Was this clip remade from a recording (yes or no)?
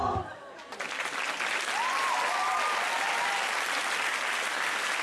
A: no